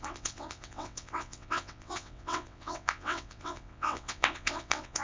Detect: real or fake fake